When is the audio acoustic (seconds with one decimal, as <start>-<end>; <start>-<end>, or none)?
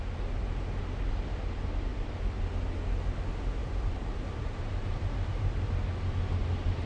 0.0-1.9; 2.4-3.6; 4.8-6.9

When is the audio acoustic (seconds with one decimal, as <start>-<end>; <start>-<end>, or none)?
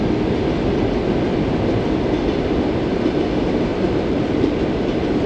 0.0-3.7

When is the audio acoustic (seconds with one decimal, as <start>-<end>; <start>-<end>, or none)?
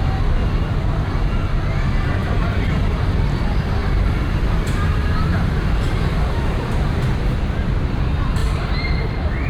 0.0-2.2; 3.2-3.8; 7.4-8.4; 9.0-9.5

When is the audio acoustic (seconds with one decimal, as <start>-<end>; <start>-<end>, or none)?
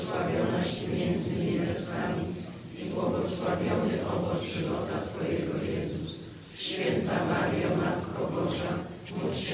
0.0-1.1; 5.6-6.7; 7.3-9.5